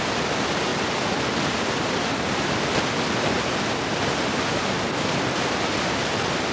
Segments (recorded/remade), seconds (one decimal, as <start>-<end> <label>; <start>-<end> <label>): 0.0-6.5 recorded